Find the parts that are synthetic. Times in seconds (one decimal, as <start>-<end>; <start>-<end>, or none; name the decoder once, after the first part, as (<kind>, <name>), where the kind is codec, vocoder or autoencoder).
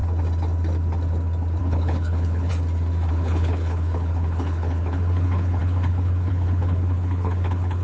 1.6-2.5 (codec, HILCodec); 3.1-7.8